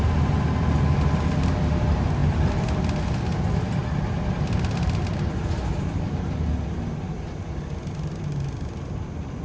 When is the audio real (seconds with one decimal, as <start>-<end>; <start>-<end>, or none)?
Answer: 0.0-3.8; 5.0-9.4